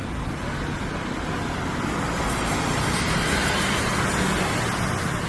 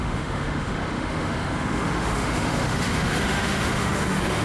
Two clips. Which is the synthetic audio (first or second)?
second